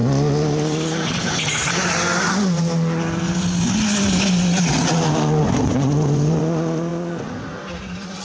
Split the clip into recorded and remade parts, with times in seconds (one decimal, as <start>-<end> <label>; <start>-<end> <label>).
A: 0.0-5.4 recorded; 5.4-6.4 remade; 6.4-8.2 recorded